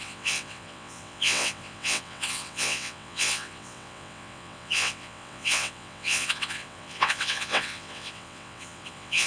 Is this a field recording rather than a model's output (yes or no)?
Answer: no